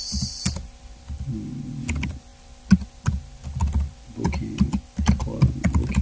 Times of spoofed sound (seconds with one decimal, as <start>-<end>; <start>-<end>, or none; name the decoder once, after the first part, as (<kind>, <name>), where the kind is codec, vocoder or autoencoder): none